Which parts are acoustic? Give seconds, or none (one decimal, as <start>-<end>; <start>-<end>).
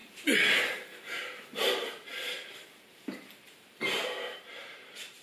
0.0-0.7